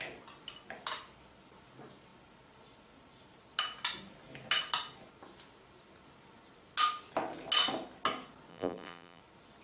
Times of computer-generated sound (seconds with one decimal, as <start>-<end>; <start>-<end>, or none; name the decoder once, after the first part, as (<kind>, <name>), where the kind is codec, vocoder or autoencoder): 8.5-9.2 (vocoder, BigVGAN v2)